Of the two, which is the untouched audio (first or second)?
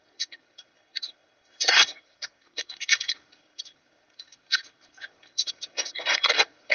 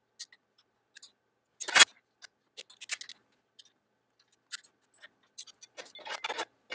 second